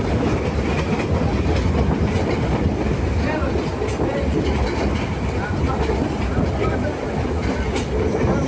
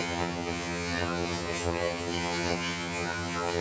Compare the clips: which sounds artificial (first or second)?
second